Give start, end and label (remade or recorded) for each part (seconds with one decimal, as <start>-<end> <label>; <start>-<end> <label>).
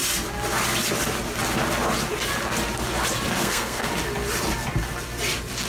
0.0-3.4 recorded; 3.4-3.9 remade; 3.9-5.7 recorded